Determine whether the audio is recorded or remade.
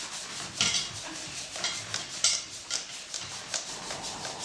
recorded